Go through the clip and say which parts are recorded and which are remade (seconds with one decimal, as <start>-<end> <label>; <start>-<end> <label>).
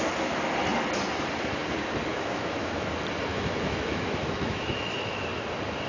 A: 0.0-2.1 recorded; 2.1-2.9 remade; 2.9-3.3 recorded; 3.3-5.2 remade; 5.2-5.9 recorded